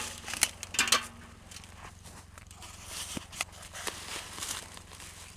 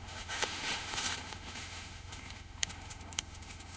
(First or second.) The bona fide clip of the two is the first